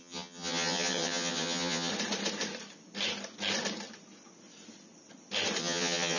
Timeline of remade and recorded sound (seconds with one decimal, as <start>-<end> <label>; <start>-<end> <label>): 0.0-1.9 remade; 1.9-5.6 recorded; 5.6-6.2 remade